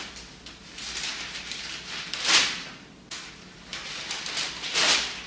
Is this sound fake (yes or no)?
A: no